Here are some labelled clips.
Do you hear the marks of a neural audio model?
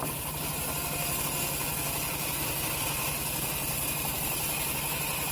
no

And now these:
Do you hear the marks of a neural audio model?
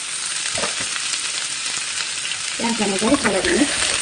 no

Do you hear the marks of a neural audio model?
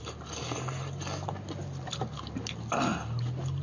no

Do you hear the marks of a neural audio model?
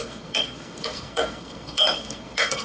yes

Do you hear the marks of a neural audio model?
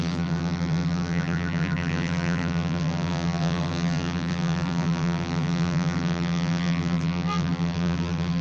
yes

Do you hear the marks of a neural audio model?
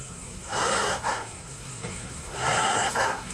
yes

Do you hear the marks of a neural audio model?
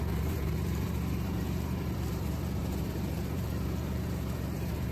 yes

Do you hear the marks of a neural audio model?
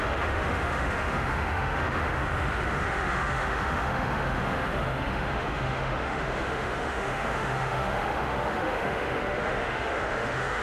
yes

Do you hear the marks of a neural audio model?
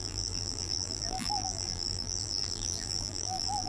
yes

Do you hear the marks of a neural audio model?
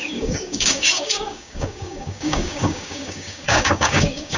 yes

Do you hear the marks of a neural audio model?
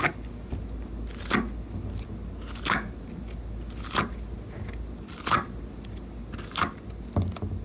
no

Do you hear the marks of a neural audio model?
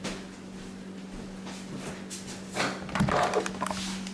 no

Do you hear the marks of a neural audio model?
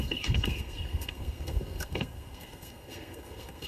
yes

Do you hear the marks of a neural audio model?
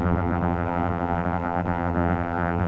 yes